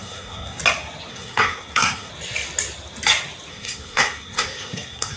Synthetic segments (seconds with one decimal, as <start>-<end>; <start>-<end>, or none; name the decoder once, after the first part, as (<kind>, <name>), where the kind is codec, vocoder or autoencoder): 0.0-0.6 (codec, SNAC); 1.1-2.1; 3.5-5.2

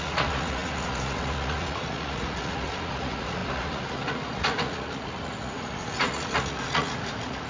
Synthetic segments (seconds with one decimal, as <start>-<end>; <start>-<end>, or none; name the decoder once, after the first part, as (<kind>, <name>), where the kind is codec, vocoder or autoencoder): 0.0-7.5 (vocoder, Vocos)

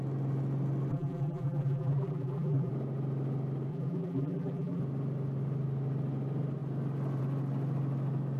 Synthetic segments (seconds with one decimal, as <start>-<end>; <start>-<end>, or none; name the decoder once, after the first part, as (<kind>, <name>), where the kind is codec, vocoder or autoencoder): 0.9-2.7 (vocoder, BigVGAN v2); 3.7-4.8

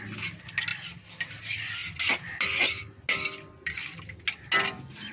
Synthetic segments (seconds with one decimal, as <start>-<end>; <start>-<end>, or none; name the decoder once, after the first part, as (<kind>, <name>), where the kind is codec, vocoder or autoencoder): none

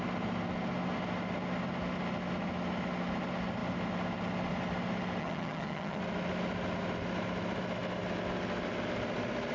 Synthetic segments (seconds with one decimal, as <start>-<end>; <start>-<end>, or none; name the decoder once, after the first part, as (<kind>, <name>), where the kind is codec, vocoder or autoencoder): 5.2-6.0 (vocoder, HiFi-GAN)